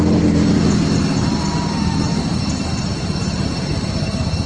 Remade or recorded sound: remade